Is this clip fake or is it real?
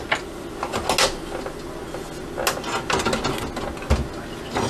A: real